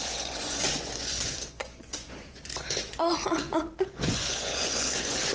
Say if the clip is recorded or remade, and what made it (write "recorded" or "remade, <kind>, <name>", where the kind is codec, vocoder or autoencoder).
remade, vocoder, Vocos